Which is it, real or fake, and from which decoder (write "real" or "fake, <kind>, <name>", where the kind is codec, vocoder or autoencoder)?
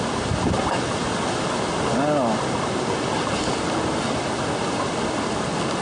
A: real